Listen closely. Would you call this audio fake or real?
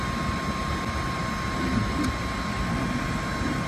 real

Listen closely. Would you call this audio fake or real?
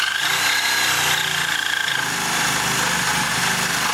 real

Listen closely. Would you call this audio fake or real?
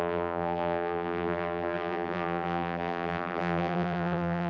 fake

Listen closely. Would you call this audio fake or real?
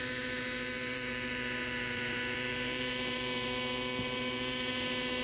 fake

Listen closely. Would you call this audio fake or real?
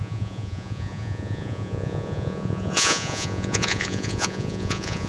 fake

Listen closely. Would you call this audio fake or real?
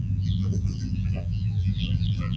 fake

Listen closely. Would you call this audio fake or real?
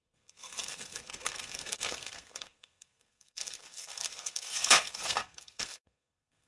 fake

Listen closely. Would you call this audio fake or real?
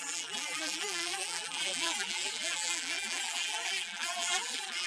fake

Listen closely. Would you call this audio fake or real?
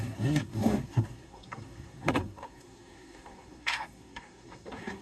fake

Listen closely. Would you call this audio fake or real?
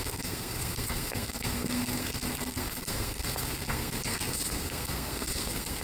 fake